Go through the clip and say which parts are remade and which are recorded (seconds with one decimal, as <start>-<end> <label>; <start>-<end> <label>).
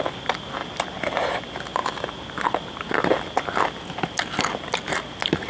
0.0-5.5 recorded